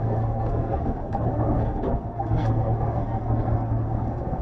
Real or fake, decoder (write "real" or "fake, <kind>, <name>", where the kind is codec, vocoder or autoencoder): fake, codec, SNAC